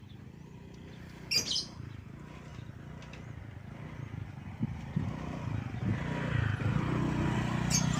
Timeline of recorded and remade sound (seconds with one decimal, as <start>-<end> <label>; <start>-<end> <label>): 0.0-8.0 recorded

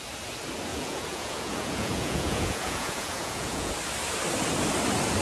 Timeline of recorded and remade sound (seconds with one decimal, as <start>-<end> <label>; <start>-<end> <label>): 0.0-0.7 recorded; 0.7-3.7 remade; 3.7-5.2 recorded

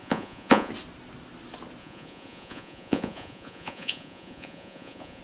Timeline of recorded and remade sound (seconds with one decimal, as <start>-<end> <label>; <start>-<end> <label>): 0.0-0.7 remade; 0.7-1.8 recorded; 1.8-5.2 remade

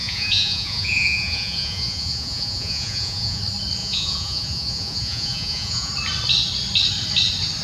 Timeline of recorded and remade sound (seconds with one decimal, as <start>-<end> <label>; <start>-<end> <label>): 0.0-3.4 remade; 3.4-3.8 recorded; 3.8-5.9 remade; 5.9-7.6 recorded

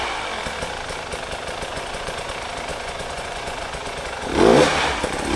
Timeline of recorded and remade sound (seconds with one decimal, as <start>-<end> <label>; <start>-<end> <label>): 0.0-1.7 recorded; 1.7-2.3 remade; 2.3-2.7 recorded; 2.7-4.3 remade; 4.3-5.4 recorded

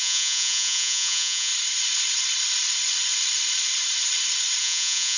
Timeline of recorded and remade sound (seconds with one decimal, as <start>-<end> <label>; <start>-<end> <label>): 0.0-1.5 remade; 1.5-4.6 recorded; 4.6-5.2 remade